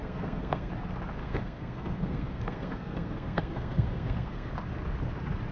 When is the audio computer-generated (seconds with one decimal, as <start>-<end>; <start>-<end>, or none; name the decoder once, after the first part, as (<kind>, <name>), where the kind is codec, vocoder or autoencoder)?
0.0-0.7 (codec, SNAC); 1.2-4.5